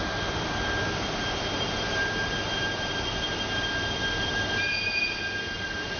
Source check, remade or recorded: remade